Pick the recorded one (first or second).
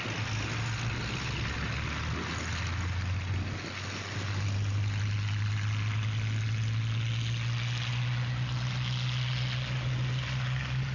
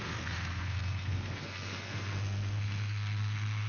first